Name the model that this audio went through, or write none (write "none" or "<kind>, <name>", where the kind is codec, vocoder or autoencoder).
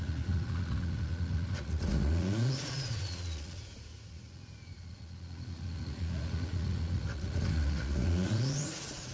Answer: vocoder, Vocos